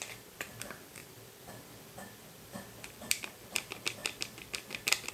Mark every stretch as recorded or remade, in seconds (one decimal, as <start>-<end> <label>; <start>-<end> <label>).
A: 0.0-4.0 remade; 4.0-5.1 recorded